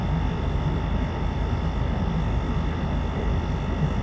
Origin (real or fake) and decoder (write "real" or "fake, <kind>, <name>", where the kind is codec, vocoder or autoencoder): real